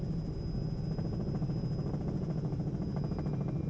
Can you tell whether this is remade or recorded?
recorded